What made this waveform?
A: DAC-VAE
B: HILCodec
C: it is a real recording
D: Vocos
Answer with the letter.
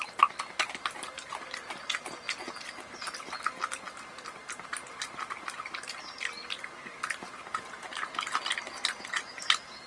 C